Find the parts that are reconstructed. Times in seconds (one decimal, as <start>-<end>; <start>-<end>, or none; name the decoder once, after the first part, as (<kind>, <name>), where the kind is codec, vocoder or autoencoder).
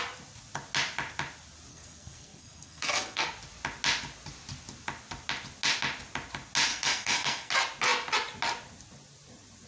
1.7-3.3 (codec, SNAC); 6.7-7.5